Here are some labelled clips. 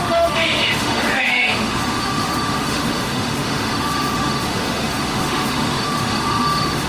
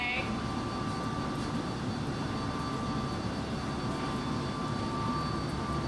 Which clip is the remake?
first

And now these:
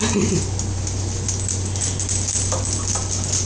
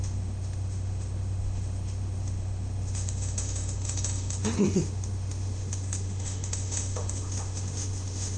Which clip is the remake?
second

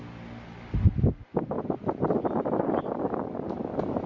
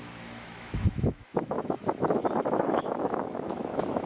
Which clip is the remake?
second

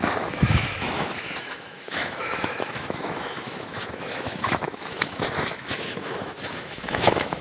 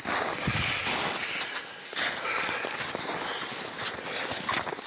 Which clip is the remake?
first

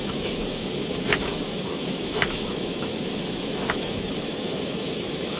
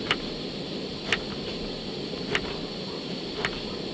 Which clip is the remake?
first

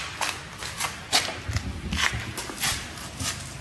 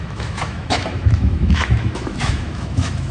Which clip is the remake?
second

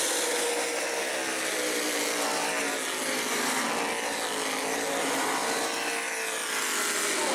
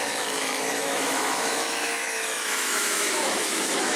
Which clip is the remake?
second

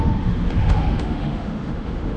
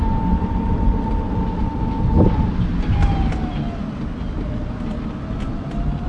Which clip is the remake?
first